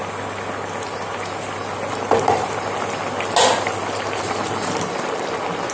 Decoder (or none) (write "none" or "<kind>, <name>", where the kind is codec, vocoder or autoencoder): none